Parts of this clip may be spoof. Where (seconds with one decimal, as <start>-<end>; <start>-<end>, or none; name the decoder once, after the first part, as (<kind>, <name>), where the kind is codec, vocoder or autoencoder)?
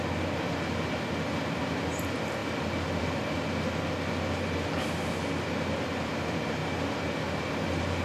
none